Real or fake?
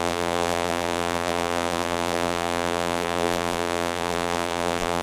fake